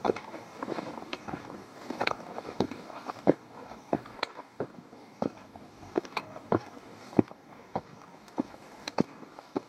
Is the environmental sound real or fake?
fake